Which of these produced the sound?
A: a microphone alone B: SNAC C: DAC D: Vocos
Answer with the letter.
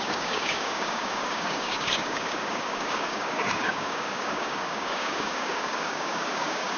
C